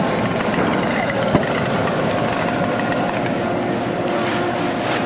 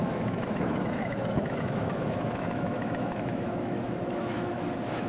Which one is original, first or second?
first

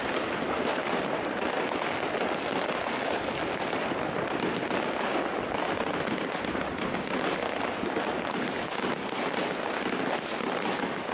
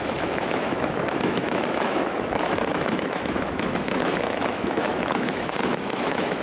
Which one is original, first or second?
first